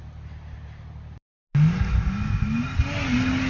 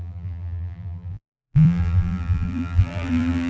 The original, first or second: first